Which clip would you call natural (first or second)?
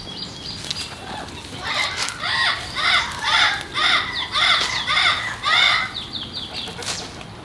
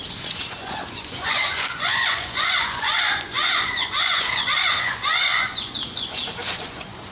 first